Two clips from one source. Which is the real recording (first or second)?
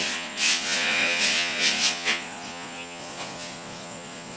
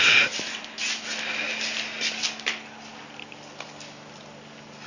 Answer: second